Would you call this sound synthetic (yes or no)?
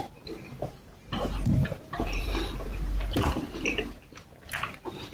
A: yes